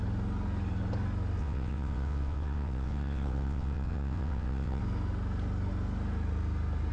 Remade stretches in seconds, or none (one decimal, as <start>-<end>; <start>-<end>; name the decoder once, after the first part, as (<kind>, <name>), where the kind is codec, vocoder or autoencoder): 1.4-4.8 (vocoder, WaveNeXt)